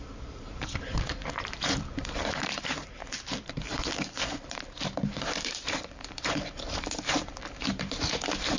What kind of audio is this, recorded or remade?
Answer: remade